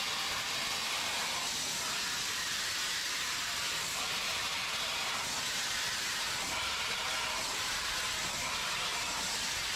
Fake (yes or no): yes